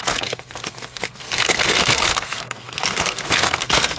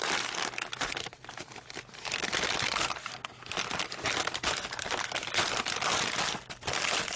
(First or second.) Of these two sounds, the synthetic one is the first